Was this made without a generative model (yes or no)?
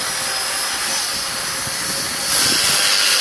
yes